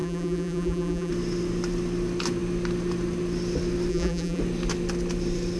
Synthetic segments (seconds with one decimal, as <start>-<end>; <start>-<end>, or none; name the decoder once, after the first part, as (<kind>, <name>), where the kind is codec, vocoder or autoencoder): 0.0-1.1 (vocoder, BigVGAN v2); 3.9-4.4